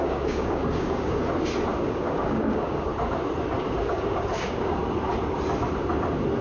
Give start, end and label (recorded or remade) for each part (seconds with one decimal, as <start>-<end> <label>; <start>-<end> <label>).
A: 0.0-1.2 remade; 1.2-1.7 recorded; 1.7-2.9 remade; 2.9-3.8 recorded; 3.8-4.8 remade; 4.8-6.4 recorded